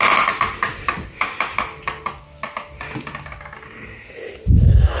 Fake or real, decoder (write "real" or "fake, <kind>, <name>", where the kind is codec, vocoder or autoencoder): real